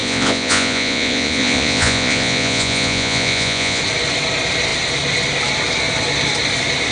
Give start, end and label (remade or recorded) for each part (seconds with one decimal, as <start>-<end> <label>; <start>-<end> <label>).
0.0-3.8 remade; 3.8-6.9 recorded